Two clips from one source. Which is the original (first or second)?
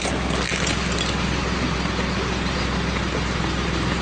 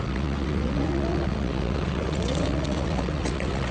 first